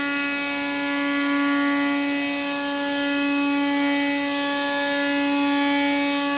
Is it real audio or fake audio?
real